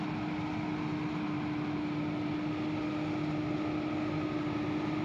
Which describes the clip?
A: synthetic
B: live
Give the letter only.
B